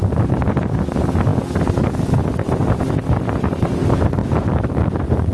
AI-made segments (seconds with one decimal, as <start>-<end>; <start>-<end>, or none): 4.2-5.3